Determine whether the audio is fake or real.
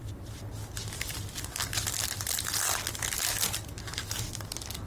real